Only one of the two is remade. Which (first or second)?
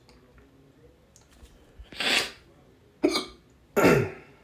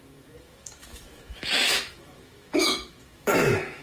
second